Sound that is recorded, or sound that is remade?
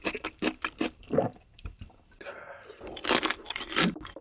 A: recorded